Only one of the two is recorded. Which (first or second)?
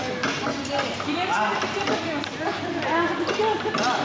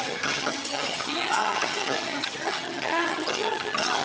first